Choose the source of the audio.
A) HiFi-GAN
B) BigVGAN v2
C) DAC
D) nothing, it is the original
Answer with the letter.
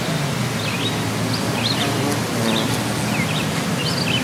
D